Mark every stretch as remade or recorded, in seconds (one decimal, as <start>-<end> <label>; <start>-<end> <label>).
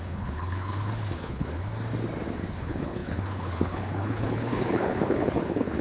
0.0-1.7 remade; 1.7-2.5 recorded; 2.5-5.8 remade